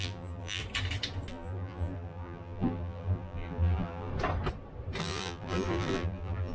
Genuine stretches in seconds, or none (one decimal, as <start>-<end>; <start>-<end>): 0.6-1.3; 4.1-5.0